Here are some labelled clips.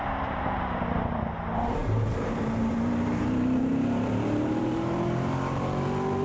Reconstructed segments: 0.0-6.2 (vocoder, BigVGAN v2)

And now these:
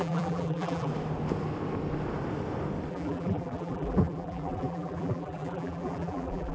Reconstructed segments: 0.0-0.9 (vocoder, BigVGAN v2); 2.9-6.5

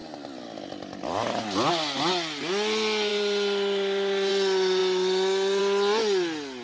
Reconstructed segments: 3.1-4.3 (vocoder, BigVGAN v2)

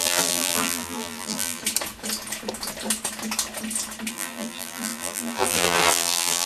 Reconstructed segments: 0.0-1.6 (vocoder, BigVGAN v2); 4.1-6.5

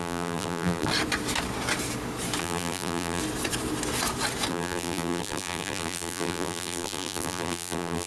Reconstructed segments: 0.0-0.9 (vocoder, BigVGAN v2); 2.4-3.2; 4.5-8.1

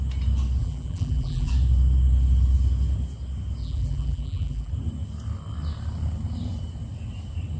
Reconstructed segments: 0.6-1.5 (vocoder, BigVGAN v2); 3.6-4.7